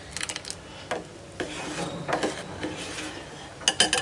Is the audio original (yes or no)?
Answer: yes